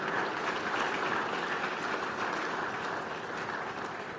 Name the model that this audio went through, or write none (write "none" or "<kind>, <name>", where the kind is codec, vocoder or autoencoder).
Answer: none